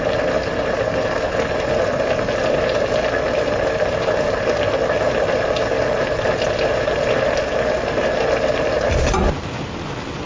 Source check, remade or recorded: recorded